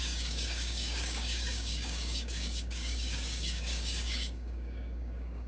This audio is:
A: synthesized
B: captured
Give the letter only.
A